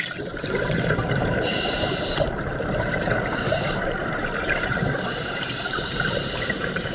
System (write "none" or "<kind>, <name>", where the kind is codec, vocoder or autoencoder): vocoder, BigVGAN v2